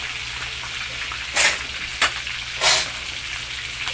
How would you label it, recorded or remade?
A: recorded